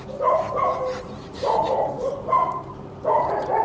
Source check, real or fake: fake